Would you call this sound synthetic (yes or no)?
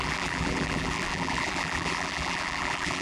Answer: yes